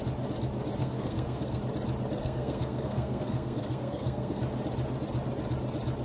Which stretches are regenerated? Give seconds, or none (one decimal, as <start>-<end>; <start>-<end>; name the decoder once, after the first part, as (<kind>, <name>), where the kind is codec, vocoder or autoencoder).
0.8-1.6 (codec, SNAC); 2.2-4.4